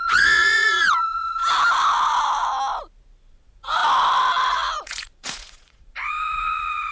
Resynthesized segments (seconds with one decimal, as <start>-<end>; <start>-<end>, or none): 0.0-1.4; 3.3-3.8; 4.5-6.9